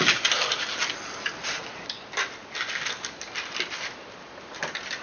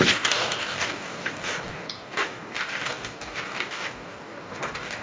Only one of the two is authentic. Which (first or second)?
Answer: first